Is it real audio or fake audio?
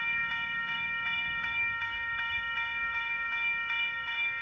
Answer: fake